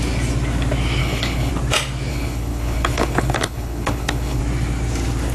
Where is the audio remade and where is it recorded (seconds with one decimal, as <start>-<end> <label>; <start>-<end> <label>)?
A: 0.0-1.0 recorded; 1.0-1.5 remade; 1.5-2.1 recorded; 2.1-4.4 remade; 4.4-5.3 recorded